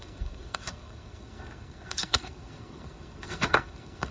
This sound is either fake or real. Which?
fake